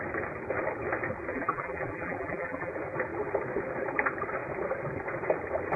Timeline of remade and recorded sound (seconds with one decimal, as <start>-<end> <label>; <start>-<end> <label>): 0.0-1.3 recorded; 1.3-2.7 remade; 2.7-5.8 recorded

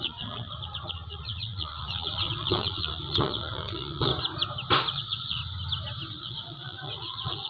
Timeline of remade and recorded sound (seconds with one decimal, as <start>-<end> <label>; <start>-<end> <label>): 0.0-4.1 remade; 4.1-4.9 recorded; 4.9-5.4 remade; 5.4-6.1 recorded; 6.1-7.5 remade

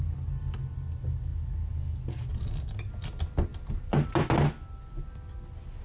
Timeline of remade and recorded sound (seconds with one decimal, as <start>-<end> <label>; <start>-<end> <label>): 0.0-5.8 recorded

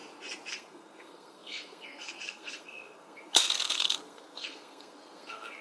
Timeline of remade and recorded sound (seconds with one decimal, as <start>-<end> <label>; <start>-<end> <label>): 0.0-0.5 recorded; 0.5-5.6 remade

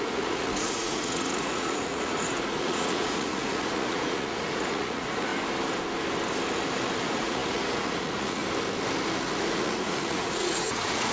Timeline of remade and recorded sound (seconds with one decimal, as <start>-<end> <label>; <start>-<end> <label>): 0.0-5.3 remade; 5.3-7.0 recorded; 7.0-8.4 remade; 8.4-9.5 recorded; 9.5-11.1 remade

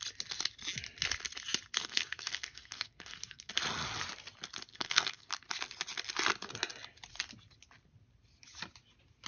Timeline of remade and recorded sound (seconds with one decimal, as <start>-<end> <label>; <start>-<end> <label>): 0.0-1.8 recorded; 1.8-3.5 remade; 3.5-4.7 recorded; 4.7-5.3 remade; 5.3-9.3 recorded